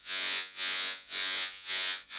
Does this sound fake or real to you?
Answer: fake